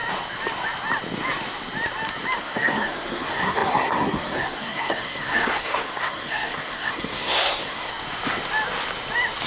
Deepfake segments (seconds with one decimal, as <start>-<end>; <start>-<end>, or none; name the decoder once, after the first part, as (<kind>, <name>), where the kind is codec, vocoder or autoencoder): 2.4-7.9 (codec, SNAC)